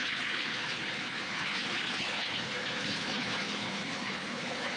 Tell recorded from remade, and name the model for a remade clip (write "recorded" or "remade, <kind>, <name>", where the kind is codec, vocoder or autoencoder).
remade, codec, HILCodec